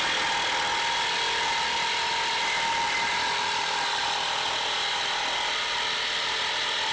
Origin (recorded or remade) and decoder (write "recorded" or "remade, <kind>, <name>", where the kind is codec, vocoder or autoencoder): recorded